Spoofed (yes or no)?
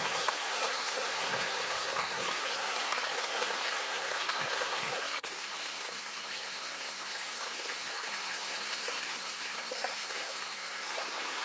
yes